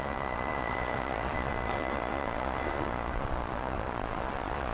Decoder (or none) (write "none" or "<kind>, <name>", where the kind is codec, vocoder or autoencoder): vocoder, Vocos